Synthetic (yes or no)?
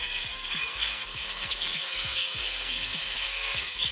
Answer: yes